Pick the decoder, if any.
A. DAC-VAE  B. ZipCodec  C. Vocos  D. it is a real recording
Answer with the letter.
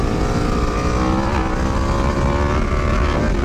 D